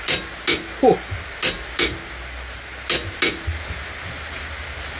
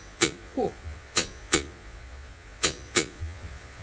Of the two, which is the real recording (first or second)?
first